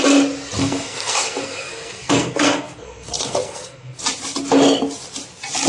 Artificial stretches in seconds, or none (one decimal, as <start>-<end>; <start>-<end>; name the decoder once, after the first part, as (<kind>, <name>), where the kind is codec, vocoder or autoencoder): 0.6-4.0 (codec, SNAC)